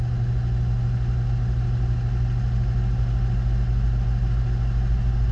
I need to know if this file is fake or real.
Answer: real